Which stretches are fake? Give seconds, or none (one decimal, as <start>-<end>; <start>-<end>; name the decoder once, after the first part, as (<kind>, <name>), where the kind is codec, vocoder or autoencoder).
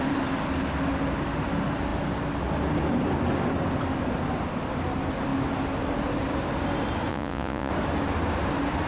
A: 7.1-7.7 (vocoder, Vocos)